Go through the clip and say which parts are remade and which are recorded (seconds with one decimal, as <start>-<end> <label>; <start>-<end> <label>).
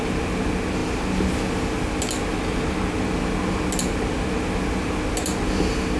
0.0-6.0 recorded